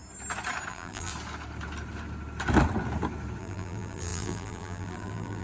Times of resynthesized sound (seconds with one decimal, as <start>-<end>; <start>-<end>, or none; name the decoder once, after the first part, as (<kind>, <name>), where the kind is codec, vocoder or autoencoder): 0.7-1.1 (vocoder, BigVGAN v2); 3.4-5.4